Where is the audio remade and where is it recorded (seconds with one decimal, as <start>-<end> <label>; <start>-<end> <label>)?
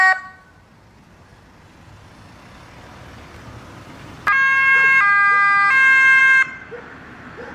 0.0-6.2 recorded; 6.2-6.8 remade; 6.8-7.5 recorded